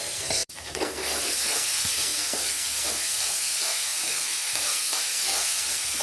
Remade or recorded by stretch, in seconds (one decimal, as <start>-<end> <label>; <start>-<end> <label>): 0.0-6.0 remade